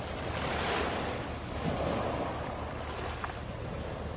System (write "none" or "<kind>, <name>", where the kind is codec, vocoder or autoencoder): none